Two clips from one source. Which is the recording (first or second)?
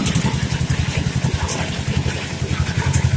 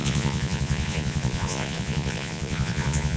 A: first